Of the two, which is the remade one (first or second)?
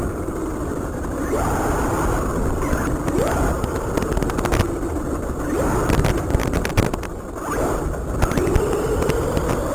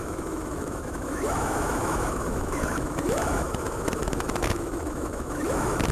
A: second